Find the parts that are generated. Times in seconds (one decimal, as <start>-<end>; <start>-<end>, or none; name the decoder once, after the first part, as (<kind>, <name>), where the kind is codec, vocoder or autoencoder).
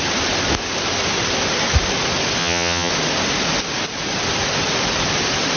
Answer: 2.4-2.9 (vocoder, HiFi-GAN)